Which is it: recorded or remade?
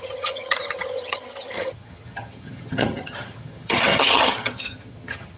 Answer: remade